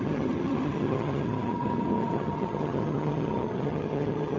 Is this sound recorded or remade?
remade